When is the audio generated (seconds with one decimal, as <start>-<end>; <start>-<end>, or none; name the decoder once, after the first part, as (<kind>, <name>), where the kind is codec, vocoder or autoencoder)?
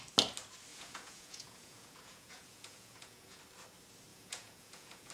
0.7-3.4 (vocoder, Vocos); 4.1-5.1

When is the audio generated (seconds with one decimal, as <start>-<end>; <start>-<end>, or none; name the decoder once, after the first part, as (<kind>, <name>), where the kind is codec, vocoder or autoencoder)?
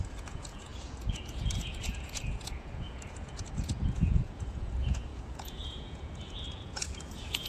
0.0-7.5 (vocoder, Vocos)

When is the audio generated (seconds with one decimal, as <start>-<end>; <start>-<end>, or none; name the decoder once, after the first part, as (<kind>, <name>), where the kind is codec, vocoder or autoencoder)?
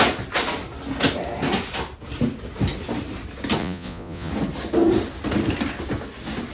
3.6-4.3 (vocoder, Vocos)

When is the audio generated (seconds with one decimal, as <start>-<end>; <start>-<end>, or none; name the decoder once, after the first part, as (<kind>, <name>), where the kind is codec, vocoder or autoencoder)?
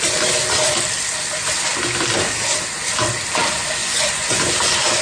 3.8-4.4 (vocoder, Vocos)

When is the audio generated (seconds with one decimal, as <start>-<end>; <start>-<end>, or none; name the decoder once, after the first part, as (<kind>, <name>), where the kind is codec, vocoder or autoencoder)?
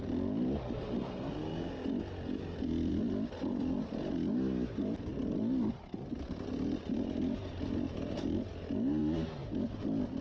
none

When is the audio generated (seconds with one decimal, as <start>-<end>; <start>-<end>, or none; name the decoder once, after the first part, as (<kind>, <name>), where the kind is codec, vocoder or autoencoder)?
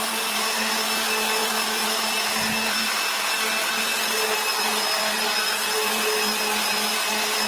none